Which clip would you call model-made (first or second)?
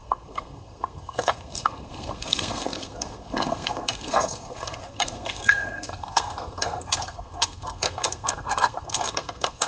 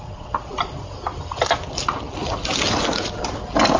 first